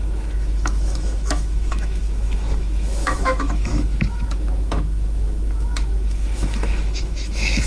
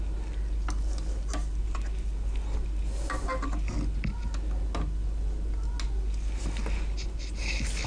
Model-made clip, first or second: first